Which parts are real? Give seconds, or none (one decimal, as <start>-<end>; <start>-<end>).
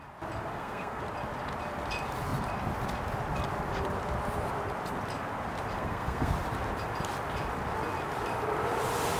0.0-0.5; 1.0-5.7; 6.3-9.2